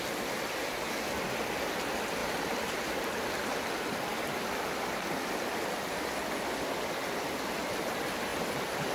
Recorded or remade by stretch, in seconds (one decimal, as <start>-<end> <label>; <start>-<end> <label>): 0.0-2.2 recorded; 2.2-3.5 remade; 3.5-4.1 recorded; 4.1-5.4 remade; 5.4-8.3 recorded; 8.3-8.9 remade